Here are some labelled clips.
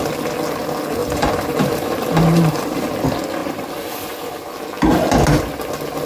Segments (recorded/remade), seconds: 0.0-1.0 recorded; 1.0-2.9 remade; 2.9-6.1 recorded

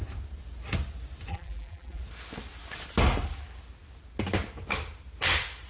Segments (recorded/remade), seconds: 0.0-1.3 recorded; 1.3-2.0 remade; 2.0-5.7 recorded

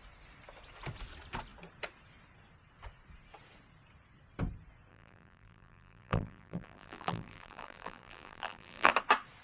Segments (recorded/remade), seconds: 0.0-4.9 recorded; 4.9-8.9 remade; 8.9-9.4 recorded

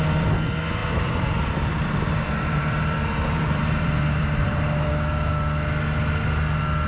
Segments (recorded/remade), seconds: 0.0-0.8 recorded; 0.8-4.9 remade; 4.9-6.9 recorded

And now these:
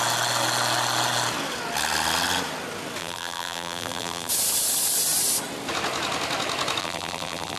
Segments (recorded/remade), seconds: 0.0-3.0 recorded; 3.0-4.3 remade; 4.3-6.8 recorded; 6.8-7.6 remade

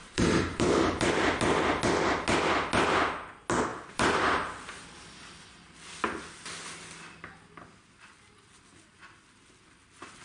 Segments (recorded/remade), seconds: 0.0-1.1 remade; 1.1-10.2 recorded

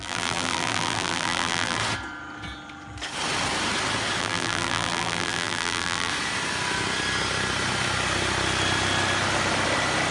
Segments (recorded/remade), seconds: 0.0-1.8 remade; 1.8-4.2 recorded; 4.2-6.1 remade; 6.1-10.1 recorded

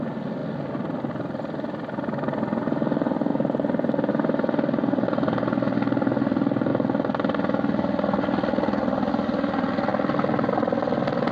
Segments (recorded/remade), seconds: 0.0-11.3 recorded